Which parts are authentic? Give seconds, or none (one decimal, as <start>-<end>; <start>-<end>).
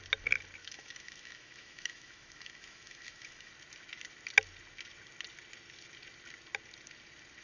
0.0-0.6; 3.5-7.4